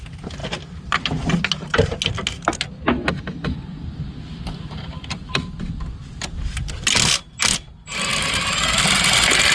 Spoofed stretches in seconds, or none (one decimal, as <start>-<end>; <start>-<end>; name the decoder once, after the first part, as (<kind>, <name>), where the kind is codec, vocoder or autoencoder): none